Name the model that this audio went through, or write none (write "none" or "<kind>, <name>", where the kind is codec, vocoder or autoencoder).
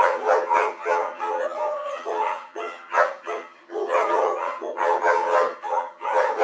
vocoder, HiFi-GAN